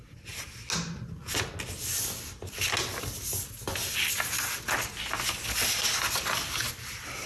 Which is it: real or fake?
real